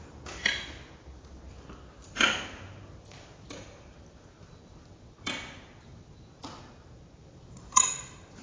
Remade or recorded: recorded